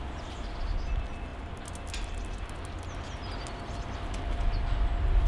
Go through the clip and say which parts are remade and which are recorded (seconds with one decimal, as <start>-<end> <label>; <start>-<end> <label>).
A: 0.0-5.3 recorded